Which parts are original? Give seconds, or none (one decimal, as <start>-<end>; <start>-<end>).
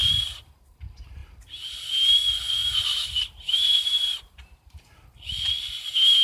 0.0-2.6; 4.8-6.2